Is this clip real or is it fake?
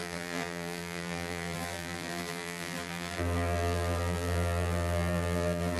fake